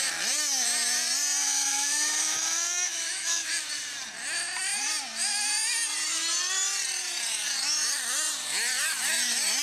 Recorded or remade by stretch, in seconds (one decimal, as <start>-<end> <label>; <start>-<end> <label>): 0.0-1.4 recorded; 1.4-3.5 remade; 3.5-9.6 recorded